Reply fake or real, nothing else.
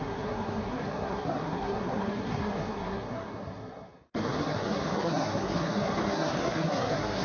fake